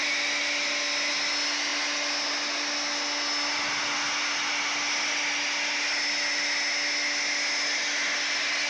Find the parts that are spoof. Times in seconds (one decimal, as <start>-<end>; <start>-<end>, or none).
none